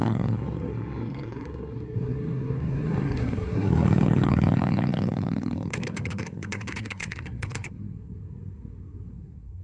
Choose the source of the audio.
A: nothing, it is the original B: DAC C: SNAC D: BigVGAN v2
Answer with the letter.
C